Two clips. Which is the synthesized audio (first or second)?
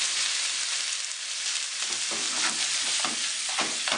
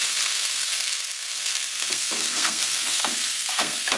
second